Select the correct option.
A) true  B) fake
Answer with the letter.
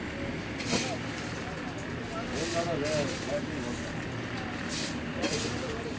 A